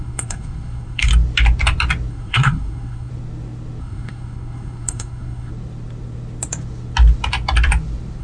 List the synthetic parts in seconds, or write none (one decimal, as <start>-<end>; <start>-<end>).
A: 0.0-1.1; 2.1-3.1; 3.8-5.5